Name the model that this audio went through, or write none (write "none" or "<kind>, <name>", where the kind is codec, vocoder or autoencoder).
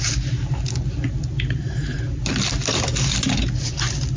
none